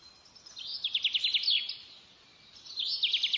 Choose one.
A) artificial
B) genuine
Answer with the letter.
B